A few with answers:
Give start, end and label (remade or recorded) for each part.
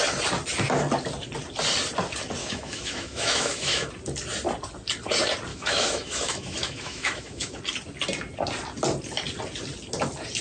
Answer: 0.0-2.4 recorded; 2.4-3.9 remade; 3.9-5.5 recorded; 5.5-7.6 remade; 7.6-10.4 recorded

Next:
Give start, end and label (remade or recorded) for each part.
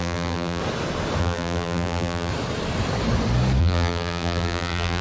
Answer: 0.0-0.6 remade; 0.6-1.2 recorded; 1.2-2.3 remade; 2.3-3.6 recorded; 3.6-5.0 remade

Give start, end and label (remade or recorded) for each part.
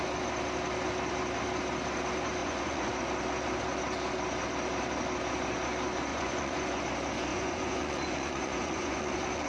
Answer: 0.0-2.4 recorded; 2.4-2.9 remade; 2.9-6.1 recorded; 6.1-6.8 remade; 6.8-7.3 recorded; 7.3-9.5 remade